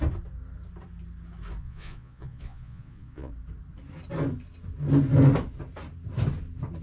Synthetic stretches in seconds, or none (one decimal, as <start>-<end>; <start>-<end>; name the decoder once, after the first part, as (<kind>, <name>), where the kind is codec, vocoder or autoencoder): 1.6-3.3 (vocoder, Vocos)